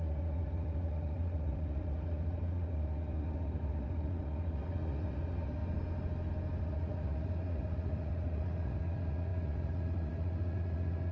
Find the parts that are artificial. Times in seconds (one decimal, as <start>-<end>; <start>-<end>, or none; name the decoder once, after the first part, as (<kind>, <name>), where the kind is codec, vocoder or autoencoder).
0.0-5.6 (vocoder, Vocos); 6.6-11.1